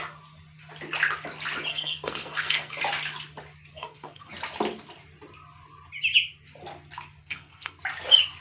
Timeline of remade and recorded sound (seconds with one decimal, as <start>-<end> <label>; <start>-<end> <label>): 0.0-1.7 recorded; 1.7-2.8 remade; 2.8-3.7 recorded; 3.7-4.3 remade; 4.3-7.2 recorded; 7.2-7.8 remade; 7.8-8.4 recorded